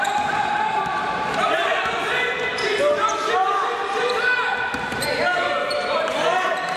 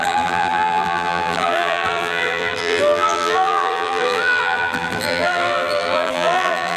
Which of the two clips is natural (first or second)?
first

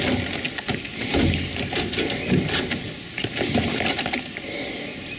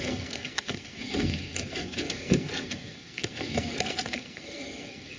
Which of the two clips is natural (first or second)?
first